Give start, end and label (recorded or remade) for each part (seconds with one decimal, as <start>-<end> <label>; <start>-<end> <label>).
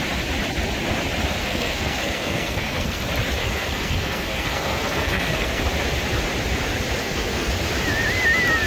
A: 0.0-1.4 recorded; 1.4-3.0 remade; 3.0-3.4 recorded; 3.4-5.6 remade; 5.6-7.0 recorded; 7.0-7.5 remade; 7.5-8.7 recorded